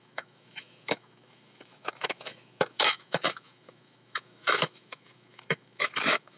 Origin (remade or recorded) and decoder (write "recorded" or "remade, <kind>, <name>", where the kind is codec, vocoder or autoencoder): remade, autoencoder, DAC-VAE